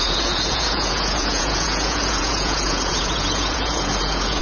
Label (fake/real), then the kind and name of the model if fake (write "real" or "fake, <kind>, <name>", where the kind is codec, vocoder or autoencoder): fake, vocoder, Vocos